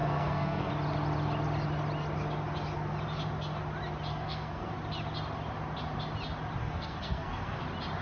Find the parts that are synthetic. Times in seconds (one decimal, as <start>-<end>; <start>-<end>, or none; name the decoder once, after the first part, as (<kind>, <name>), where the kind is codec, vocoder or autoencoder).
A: 0.0-0.7 (codec, SNAC); 4.1-4.7; 6.6-7.6